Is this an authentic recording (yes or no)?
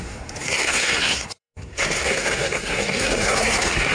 no